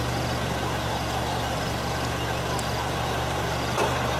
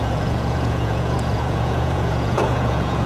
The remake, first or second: second